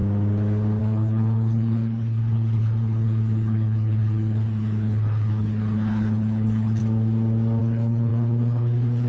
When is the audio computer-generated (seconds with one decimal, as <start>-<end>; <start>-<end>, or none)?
0.8-6.8; 7.6-9.1

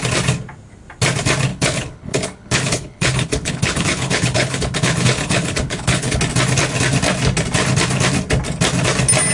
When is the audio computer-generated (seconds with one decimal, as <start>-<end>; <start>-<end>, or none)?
1.5-6.2

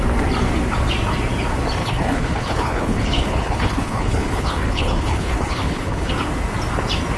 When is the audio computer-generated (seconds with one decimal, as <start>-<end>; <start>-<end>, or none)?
1.8-6.1

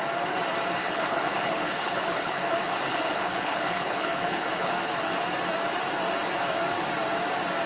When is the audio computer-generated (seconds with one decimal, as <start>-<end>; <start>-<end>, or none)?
0.8-4.7

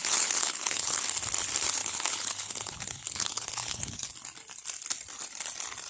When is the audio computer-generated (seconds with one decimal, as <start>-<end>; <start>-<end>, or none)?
0.0-1.0; 1.8-4.1